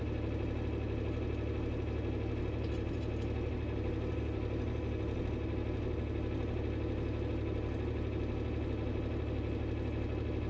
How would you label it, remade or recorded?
recorded